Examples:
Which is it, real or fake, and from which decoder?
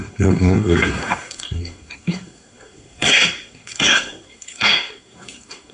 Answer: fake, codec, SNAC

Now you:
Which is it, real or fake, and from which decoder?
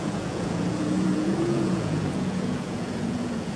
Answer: fake, vocoder, Vocos